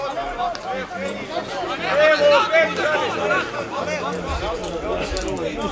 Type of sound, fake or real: real